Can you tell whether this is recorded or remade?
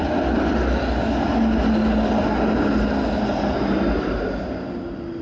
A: recorded